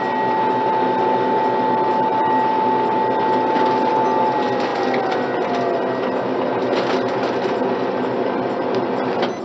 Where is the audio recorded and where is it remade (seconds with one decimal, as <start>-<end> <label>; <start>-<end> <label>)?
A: 0.0-9.4 recorded